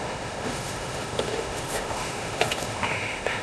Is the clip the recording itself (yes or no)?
no